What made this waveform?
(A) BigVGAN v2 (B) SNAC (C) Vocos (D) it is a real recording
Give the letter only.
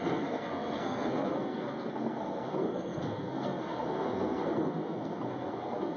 B